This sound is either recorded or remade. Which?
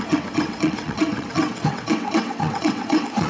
remade